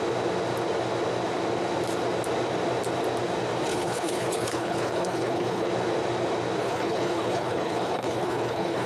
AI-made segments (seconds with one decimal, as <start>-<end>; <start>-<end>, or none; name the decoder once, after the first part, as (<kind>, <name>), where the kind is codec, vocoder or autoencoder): 3.7-5.7 (codec, HILCodec); 6.6-8.9